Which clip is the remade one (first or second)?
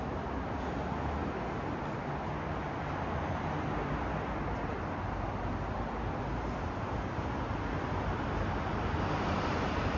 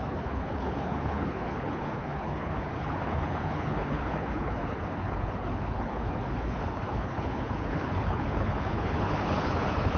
second